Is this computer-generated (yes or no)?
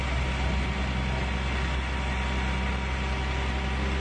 no